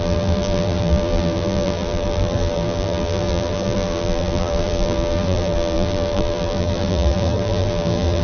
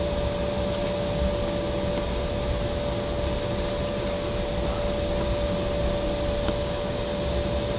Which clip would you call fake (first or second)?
first